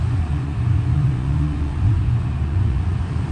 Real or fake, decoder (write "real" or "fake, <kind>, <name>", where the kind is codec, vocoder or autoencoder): fake, vocoder, Vocos